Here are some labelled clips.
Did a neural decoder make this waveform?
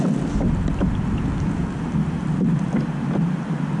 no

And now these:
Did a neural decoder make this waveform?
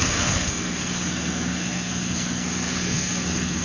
yes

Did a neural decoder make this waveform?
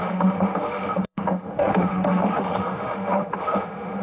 yes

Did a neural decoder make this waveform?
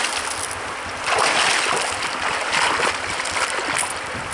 no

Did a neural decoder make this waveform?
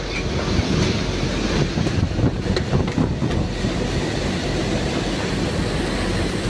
no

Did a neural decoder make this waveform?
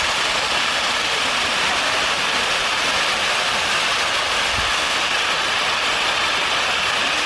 no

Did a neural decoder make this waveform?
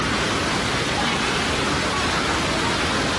no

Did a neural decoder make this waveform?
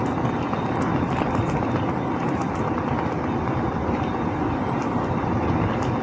no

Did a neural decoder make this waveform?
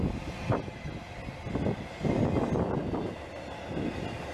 no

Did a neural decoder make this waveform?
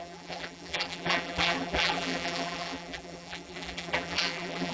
yes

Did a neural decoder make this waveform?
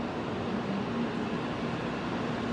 no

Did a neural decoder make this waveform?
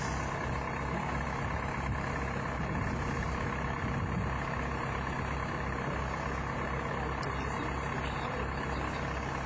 no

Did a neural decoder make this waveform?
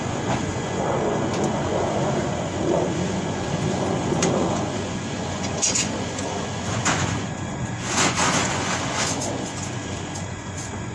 yes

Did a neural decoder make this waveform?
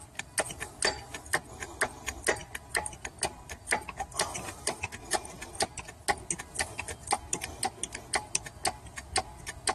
no